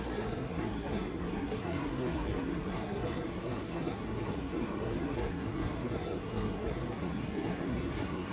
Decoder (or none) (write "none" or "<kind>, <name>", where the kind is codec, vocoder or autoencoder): codec, SNAC